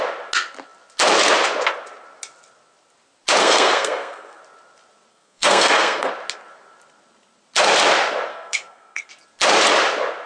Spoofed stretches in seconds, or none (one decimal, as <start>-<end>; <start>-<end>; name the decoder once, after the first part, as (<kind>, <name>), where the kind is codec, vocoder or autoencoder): 3.4-4.4 (codec, SNAC); 5.1-6.1; 8.3-9.1